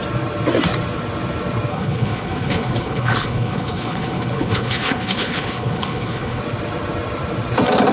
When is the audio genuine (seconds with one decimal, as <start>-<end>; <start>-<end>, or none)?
0.0-1.7; 6.4-7.9